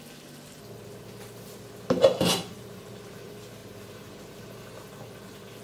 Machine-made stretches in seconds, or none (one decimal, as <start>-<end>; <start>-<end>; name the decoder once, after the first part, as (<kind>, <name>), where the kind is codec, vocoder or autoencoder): 2.3-2.9 (vocoder, BigVGAN v2)